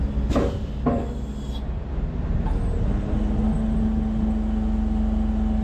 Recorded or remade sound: recorded